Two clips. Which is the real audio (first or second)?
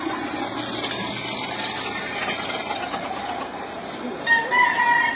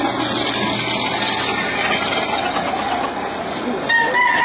second